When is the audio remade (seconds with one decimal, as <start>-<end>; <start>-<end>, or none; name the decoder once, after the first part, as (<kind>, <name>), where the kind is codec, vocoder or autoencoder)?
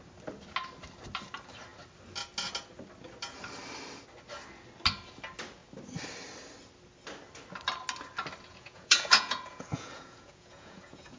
8.5-11.2 (vocoder, Vocos)